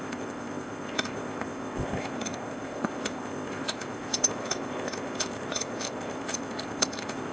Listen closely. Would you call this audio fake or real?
fake